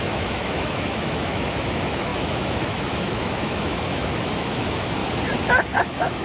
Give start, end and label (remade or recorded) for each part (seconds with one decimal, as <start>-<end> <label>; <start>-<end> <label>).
0.0-5.0 remade; 5.0-5.8 recorded; 5.8-6.2 remade